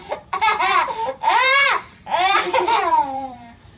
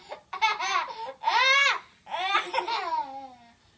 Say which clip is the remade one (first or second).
first